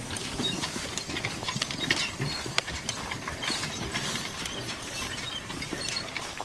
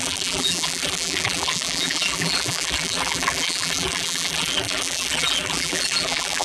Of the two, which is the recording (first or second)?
first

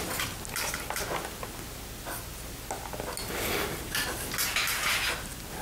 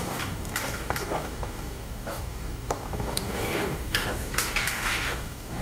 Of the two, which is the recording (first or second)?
first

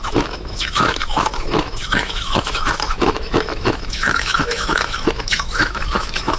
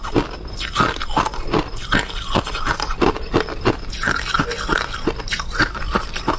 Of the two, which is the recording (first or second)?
second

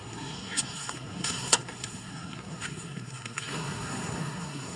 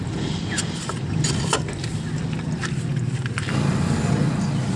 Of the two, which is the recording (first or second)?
second